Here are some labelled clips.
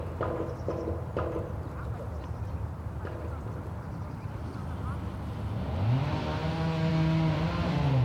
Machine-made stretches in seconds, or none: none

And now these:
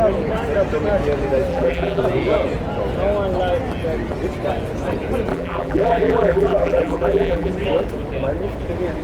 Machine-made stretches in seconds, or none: 1.5-2.0 (vocoder, BigVGAN v2); 5.3-7.5

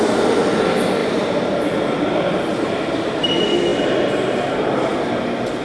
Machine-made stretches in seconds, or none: 1.0-3.2 (vocoder, BigVGAN v2)

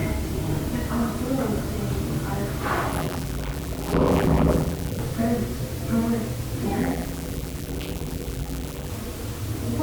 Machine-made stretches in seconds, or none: 2.9-5.0 (vocoder, BigVGAN v2); 6.8-8.9

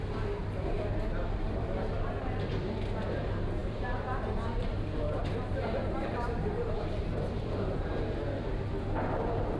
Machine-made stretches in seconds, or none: 3.6-7.8 (vocoder, BigVGAN v2)

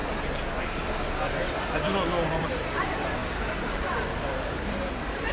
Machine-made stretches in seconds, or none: 2.4-5.3 (vocoder, BigVGAN v2)